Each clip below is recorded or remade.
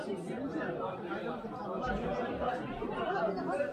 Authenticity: remade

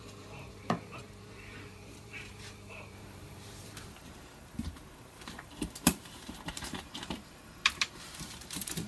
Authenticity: remade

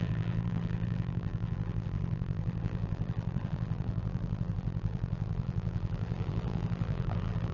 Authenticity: remade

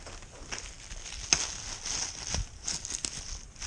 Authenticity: recorded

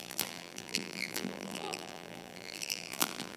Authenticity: remade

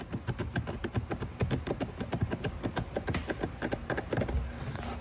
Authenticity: recorded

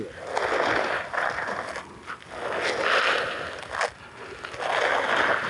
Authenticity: recorded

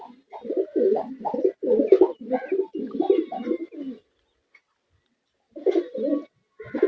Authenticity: recorded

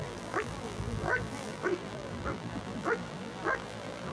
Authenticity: remade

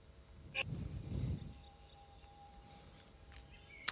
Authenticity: remade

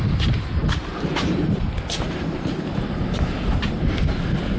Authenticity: remade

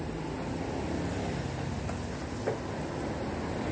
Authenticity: recorded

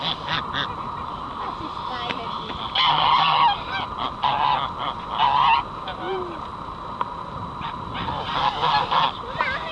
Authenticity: recorded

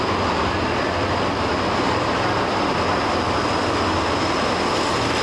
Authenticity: remade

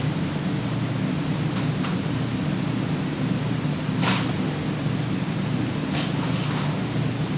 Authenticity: recorded